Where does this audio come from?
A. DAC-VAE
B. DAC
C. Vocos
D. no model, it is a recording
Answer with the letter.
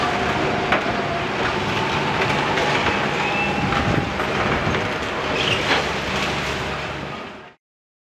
D